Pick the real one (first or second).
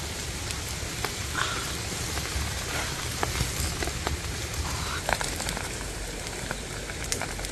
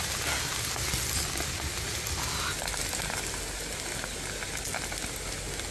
second